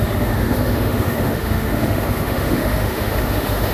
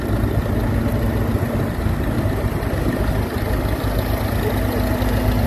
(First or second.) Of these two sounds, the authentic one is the second